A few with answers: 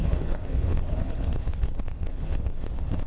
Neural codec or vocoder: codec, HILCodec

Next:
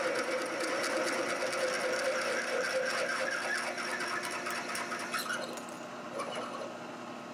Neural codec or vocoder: none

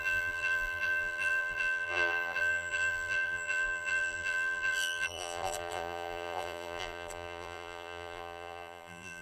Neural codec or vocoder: vocoder, BigVGAN v2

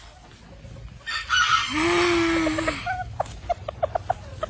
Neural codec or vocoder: none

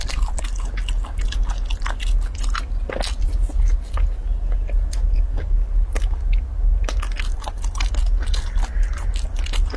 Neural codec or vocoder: none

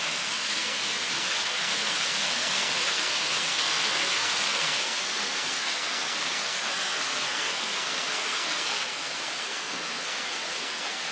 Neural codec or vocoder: codec, SNAC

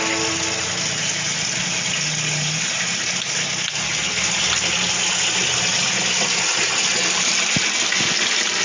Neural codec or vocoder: none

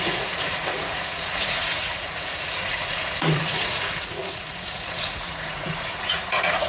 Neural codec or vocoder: vocoder, Vocos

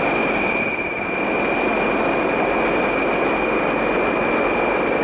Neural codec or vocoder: none